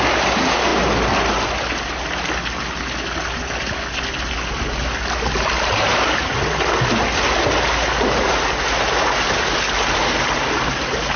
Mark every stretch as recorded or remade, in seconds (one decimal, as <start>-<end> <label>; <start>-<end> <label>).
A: 0.0-11.2 recorded